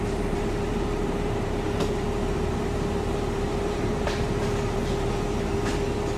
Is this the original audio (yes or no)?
no